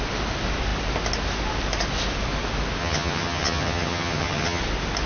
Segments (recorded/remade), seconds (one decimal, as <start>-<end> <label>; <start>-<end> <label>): 0.0-2.8 recorded; 2.8-4.6 remade; 4.6-5.1 recorded